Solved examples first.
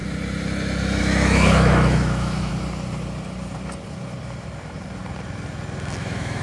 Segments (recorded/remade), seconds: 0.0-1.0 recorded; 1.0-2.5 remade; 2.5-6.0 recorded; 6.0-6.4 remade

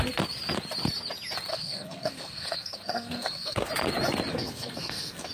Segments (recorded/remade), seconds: 0.0-1.5 recorded; 1.5-3.7 remade; 3.7-4.3 recorded; 4.3-5.3 remade

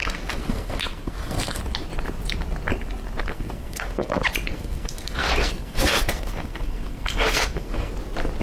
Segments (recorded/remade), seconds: 0.0-1.6 remade; 1.6-3.3 recorded; 3.3-4.1 remade; 4.1-4.5 recorded; 4.5-7.9 remade; 7.9-8.4 recorded

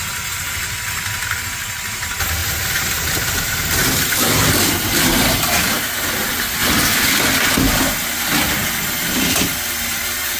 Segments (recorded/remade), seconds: 0.0-2.4 recorded; 2.4-3.1 remade; 3.1-8.6 recorded; 8.6-10.4 remade

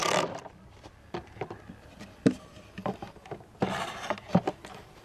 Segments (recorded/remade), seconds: 0.0-2.2 remade; 2.2-5.0 recorded

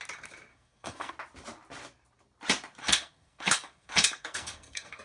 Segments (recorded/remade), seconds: 0.0-0.5 recorded; 0.5-1.1 remade; 1.1-2.8 recorded; 2.8-5.0 remade